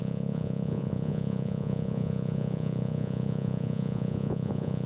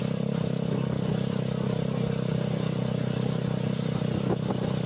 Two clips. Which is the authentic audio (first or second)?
second